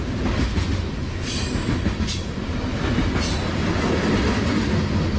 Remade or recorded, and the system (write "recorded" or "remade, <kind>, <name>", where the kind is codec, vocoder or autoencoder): recorded